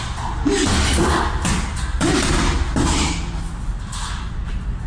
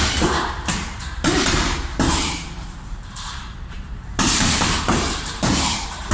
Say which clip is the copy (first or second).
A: second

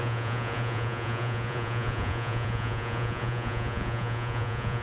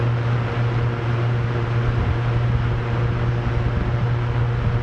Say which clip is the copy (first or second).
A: first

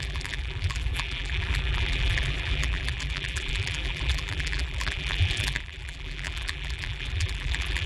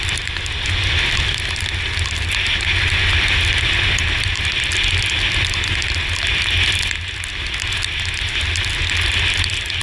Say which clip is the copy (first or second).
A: first